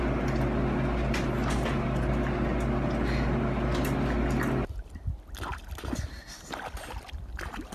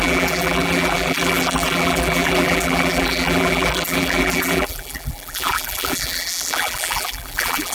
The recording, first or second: first